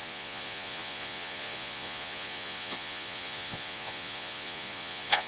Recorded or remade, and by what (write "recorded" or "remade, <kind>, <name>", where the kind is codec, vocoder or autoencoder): remade, vocoder, Vocos